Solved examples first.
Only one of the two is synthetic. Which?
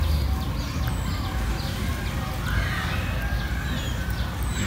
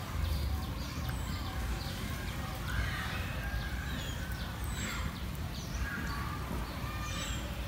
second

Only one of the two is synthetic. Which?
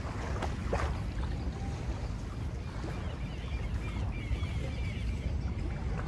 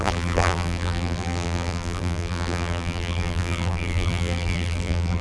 second